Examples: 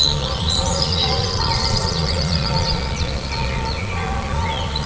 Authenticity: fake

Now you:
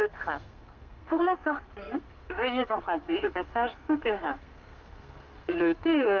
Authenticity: fake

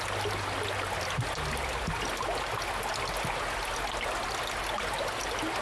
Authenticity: real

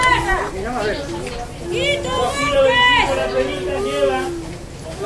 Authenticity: real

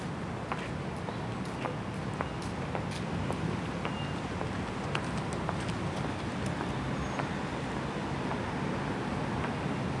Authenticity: real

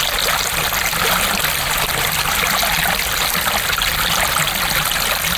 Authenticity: real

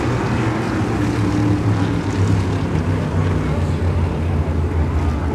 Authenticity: real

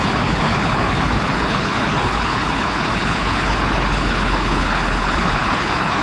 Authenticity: fake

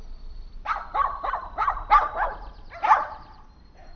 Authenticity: real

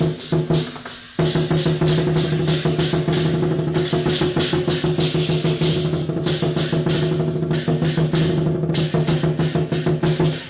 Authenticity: real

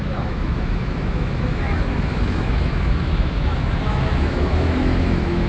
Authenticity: fake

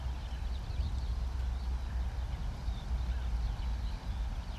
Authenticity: real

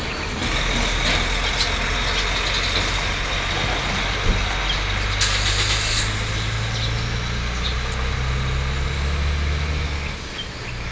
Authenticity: real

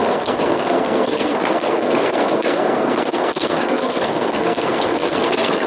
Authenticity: fake